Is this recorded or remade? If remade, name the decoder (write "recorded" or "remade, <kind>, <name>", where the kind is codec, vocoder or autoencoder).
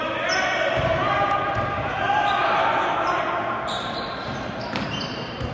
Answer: remade, vocoder, BigVGAN v2